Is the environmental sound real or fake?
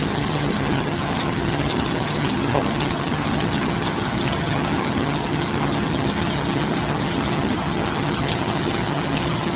fake